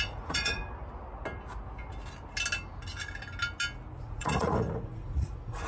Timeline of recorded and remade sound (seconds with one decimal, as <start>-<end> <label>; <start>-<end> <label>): 0.0-0.6 remade; 0.6-4.0 recorded; 4.0-5.7 remade